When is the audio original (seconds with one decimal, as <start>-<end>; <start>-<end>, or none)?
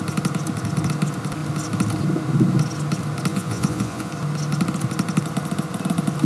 0.0-3.3; 4.1-6.2